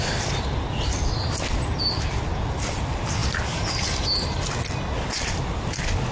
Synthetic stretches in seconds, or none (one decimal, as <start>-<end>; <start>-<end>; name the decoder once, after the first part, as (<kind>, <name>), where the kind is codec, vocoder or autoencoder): none